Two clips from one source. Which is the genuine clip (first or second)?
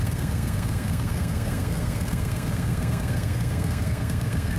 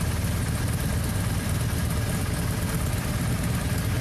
second